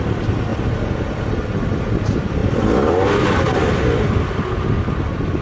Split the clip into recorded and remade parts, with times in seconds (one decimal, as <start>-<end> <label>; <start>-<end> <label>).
0.0-5.4 recorded

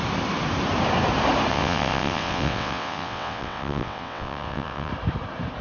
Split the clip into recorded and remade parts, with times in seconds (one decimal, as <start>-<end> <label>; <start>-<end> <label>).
0.0-1.5 recorded; 1.5-4.9 remade; 4.9-5.6 recorded

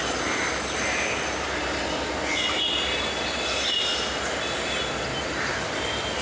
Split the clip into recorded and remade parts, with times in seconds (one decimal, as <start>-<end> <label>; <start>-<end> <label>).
0.0-6.2 recorded

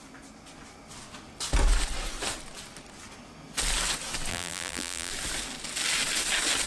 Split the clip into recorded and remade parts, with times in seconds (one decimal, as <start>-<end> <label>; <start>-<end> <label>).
0.0-4.3 recorded; 4.3-5.1 remade; 5.1-6.7 recorded

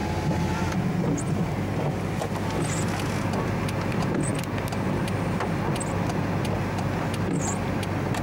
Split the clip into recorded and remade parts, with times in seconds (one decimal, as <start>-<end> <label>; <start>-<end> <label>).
0.0-8.2 recorded

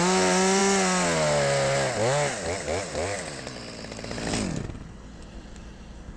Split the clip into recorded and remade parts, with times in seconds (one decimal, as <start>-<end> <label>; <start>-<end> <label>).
0.0-6.2 recorded